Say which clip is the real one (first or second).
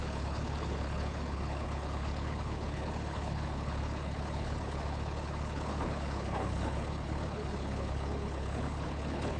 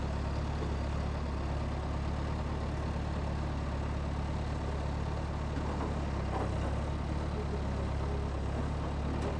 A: second